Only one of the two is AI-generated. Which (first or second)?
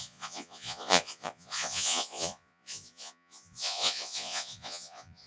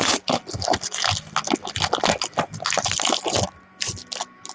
first